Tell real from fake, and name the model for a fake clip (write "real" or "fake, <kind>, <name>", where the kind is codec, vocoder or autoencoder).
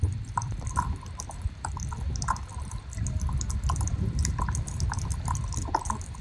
fake, vocoder, BigVGAN v2